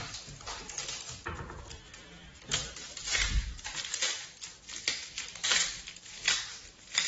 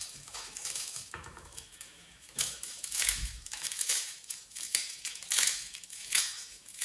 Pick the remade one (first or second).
second